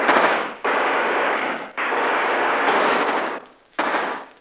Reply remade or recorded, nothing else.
remade